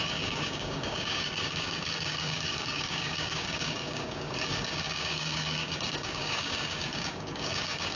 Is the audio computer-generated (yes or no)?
yes